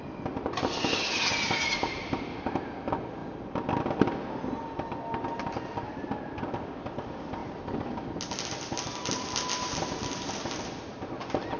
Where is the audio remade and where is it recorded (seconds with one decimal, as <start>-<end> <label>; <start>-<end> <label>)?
0.0-11.6 recorded